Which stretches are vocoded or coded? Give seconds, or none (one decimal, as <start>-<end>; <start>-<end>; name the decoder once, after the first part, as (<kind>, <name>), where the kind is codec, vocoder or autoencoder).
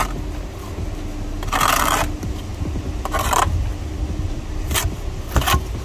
none